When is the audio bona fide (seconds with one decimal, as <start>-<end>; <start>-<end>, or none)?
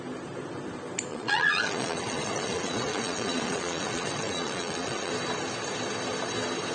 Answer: 0.0-1.1; 5.1-6.7